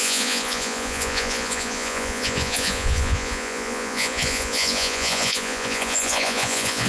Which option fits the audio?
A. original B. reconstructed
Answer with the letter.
B